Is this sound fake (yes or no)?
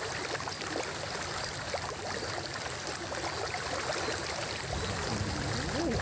no